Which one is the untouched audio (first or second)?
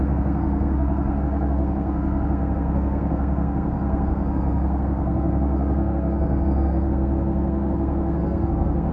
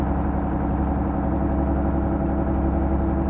second